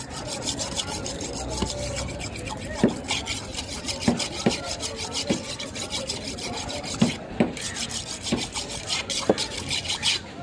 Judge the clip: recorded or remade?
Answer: recorded